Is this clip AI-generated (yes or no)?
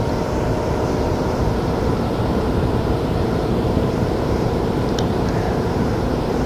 yes